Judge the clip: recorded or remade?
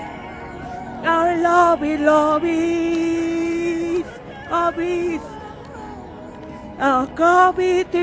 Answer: recorded